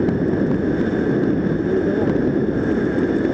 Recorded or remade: recorded